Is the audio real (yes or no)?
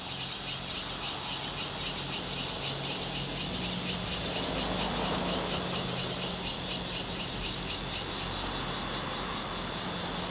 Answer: yes